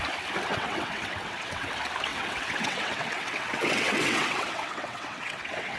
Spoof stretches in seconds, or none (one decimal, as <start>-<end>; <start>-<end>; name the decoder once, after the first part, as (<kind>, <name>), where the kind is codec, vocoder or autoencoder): 0.5-1.7 (vocoder, WaveNeXt); 2.1-5.8